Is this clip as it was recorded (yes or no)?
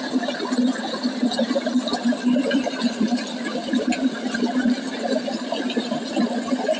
yes